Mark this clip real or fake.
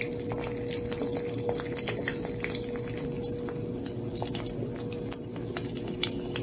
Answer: real